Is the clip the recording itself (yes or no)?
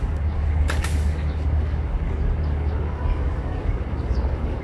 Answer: no